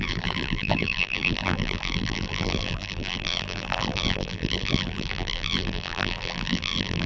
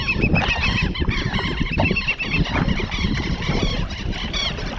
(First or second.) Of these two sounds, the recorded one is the second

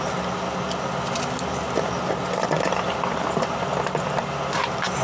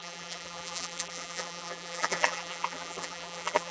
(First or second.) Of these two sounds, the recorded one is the first